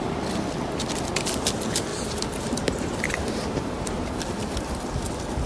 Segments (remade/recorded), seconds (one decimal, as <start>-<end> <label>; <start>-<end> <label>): 0.0-1.9 recorded; 1.9-4.2 remade; 4.2-5.5 recorded